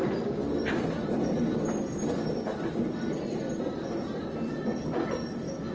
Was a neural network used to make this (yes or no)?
no